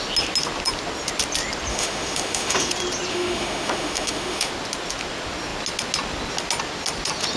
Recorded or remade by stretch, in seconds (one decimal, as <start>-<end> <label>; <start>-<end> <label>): 0.0-1.7 recorded; 1.7-2.7 remade; 2.7-3.1 recorded; 3.1-4.5 remade; 4.5-7.4 recorded